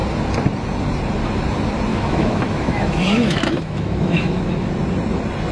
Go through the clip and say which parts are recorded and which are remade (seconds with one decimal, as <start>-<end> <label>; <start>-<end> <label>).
0.0-1.9 recorded; 1.9-4.7 remade; 4.7-5.5 recorded